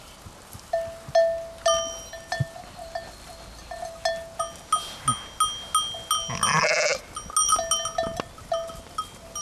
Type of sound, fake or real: real